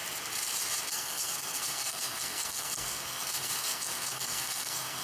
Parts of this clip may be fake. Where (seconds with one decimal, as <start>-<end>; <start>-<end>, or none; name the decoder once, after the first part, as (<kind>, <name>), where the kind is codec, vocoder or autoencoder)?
0.9-5.0 (codec, SNAC)